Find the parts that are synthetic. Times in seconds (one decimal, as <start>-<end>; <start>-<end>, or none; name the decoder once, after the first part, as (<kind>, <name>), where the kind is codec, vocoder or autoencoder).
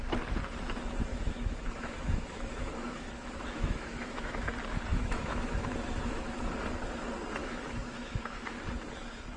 1.1-4.5 (autoencoder, DAC-VAE); 4.9-6.5; 7.4-8.6